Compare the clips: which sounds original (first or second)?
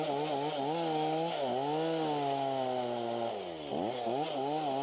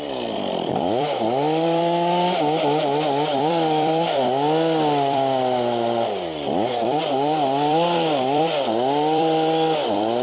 first